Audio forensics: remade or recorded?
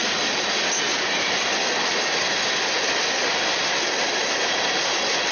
recorded